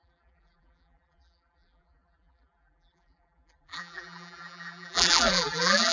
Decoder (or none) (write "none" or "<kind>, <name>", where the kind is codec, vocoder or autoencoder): vocoder, BigVGAN v2